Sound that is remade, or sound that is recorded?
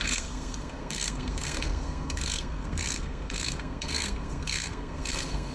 remade